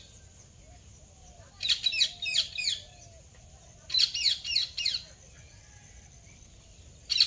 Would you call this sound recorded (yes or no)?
yes